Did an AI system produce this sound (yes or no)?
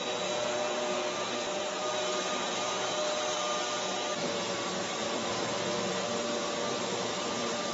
no